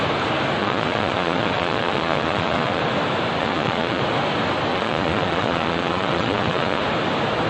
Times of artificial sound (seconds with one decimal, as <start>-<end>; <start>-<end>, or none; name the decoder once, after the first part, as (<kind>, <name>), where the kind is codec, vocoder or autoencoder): 0.6-2.8 (vocoder, Vocos); 3.4-4.0; 4.7-6.8